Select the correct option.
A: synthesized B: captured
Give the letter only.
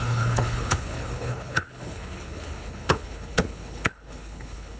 A